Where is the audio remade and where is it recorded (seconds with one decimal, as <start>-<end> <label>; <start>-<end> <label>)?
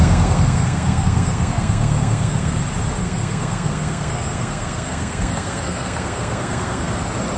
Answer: 0.0-2.6 remade; 2.6-3.0 recorded; 3.0-6.9 remade; 6.9-7.4 recorded